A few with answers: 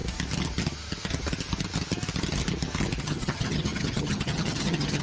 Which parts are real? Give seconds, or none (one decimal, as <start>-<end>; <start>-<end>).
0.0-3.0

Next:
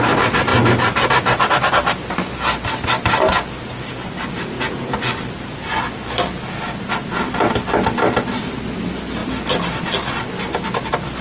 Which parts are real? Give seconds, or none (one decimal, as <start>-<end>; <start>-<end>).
0.0-11.2

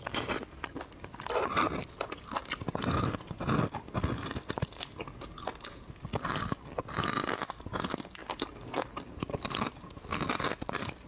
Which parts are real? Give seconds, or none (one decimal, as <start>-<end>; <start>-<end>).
0.0-11.1